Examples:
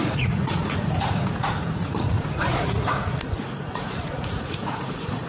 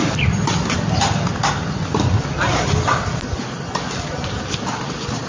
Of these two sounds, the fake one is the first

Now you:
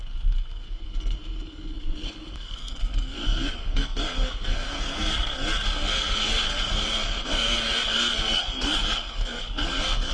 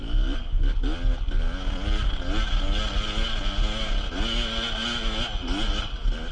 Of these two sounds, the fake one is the first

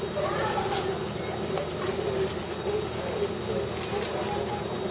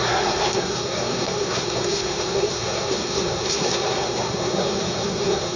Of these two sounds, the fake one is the second